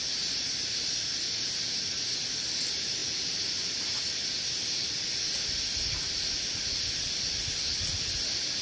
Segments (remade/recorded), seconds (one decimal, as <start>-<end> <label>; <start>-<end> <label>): 0.0-8.6 recorded